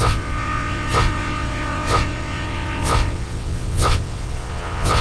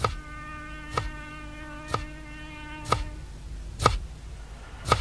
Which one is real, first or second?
second